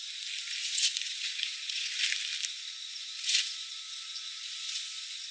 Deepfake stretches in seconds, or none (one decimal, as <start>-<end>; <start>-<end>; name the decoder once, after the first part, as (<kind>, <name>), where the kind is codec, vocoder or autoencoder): 0.6-2.0 (vocoder, Vocos); 3.0-4.8